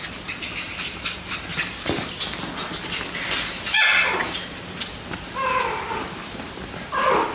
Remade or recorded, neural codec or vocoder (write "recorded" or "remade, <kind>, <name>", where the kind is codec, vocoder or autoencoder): recorded